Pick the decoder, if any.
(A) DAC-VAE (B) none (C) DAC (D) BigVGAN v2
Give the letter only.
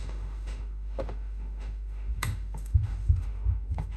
A